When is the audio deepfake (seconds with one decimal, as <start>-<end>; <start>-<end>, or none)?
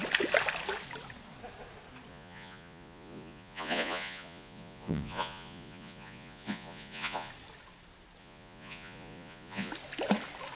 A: 2.1-7.3; 8.2-9.7